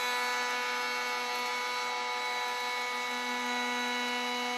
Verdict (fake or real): real